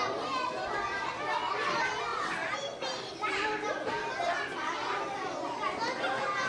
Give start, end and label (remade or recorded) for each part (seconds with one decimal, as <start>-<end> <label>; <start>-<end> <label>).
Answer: 0.0-6.5 recorded